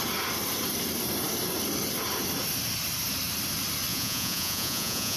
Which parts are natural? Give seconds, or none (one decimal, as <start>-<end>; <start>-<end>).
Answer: 0.0-3.9